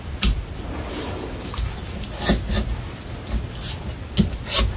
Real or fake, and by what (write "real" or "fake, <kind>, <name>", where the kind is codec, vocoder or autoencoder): real